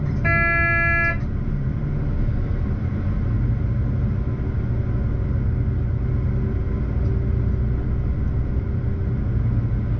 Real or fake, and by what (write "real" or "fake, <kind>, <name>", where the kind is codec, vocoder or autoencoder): real